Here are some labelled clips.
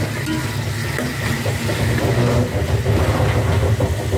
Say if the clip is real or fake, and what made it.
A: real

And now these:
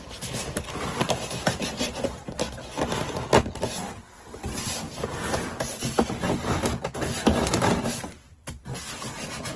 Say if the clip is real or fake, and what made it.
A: real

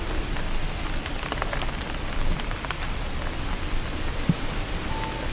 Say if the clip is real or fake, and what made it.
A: real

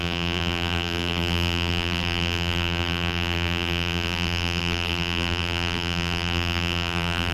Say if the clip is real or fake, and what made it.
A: fake, vocoder, BigVGAN v2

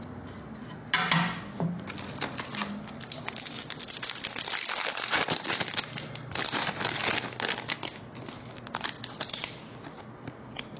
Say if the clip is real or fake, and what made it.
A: real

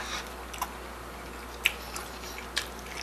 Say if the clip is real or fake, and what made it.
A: real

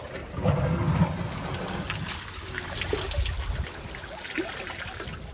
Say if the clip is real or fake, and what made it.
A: real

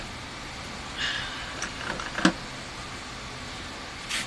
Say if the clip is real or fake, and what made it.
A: real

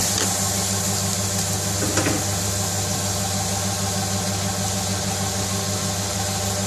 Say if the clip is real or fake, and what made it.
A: real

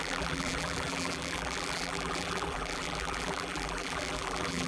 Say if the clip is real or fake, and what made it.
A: fake, vocoder, BigVGAN v2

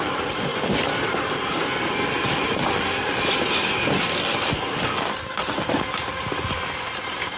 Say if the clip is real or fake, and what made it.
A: real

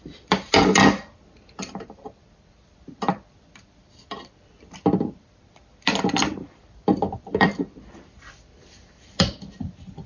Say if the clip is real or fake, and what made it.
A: fake, vocoder, BigVGAN v2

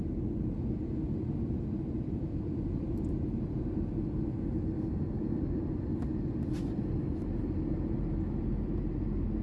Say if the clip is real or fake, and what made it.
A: real